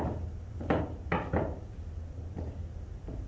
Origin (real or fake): real